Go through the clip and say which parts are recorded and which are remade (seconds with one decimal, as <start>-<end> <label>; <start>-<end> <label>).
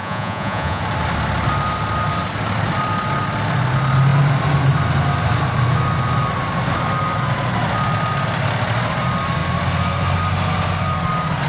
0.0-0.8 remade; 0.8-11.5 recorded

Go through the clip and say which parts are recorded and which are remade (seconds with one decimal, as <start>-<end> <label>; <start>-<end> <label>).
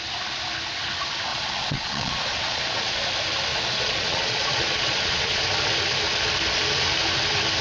0.0-1.3 recorded; 1.3-3.1 remade; 3.1-3.5 recorded; 3.5-5.4 remade; 5.4-7.6 recorded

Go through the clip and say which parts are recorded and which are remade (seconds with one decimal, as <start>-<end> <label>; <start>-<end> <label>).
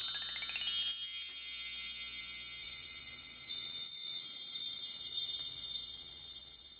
0.0-2.6 recorded; 2.6-6.8 remade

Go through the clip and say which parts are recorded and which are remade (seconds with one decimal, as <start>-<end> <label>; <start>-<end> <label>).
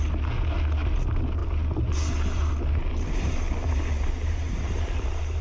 0.0-5.4 recorded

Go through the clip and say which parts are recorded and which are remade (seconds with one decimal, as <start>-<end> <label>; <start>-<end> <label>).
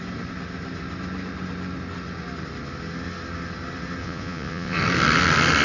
0.0-4.0 recorded; 4.0-4.8 remade; 4.8-5.6 recorded